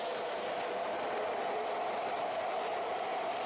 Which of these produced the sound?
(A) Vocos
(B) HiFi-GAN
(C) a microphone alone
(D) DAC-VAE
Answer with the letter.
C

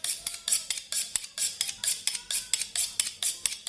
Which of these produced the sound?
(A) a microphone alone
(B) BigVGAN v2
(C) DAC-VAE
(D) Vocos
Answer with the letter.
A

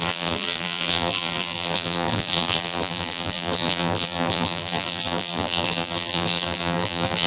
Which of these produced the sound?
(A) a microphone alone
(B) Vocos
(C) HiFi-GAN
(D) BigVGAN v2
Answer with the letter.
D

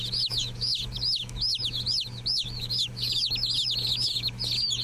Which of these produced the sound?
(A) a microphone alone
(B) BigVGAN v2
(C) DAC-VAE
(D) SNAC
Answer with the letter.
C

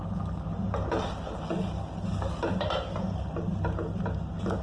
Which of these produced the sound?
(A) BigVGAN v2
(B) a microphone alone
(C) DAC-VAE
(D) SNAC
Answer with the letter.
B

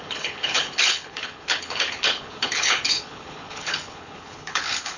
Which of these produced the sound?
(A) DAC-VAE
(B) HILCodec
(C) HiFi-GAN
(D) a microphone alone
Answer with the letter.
B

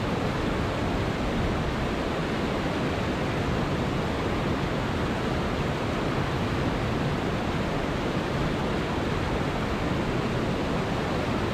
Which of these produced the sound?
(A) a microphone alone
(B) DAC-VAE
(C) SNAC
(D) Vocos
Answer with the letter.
A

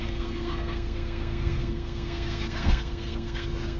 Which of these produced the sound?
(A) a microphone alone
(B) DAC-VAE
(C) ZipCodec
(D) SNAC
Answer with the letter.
D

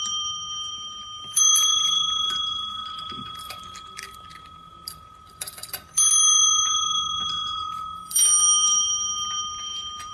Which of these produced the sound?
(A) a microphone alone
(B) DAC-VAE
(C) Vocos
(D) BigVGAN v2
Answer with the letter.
D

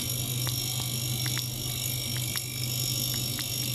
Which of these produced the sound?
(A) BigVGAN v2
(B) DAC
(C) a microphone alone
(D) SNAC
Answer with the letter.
C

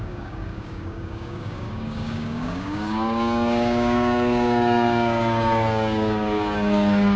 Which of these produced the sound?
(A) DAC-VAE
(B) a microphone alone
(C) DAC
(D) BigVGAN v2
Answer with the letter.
C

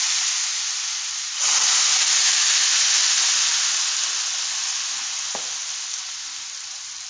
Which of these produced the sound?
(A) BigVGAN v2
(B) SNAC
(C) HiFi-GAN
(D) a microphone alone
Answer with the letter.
D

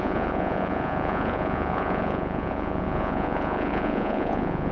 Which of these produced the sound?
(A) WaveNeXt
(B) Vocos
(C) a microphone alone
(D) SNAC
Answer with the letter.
B